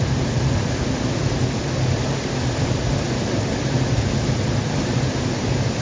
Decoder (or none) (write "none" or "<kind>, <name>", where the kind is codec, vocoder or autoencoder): none